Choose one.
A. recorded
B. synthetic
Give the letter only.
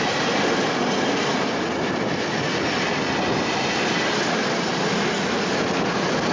A